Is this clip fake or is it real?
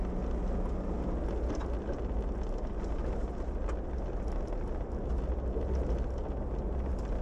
real